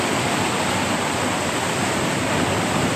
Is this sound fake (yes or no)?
no